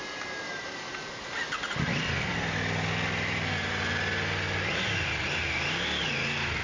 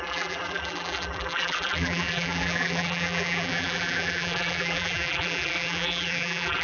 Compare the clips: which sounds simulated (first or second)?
second